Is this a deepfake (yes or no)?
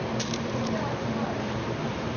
yes